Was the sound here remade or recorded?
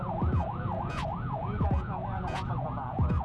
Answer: remade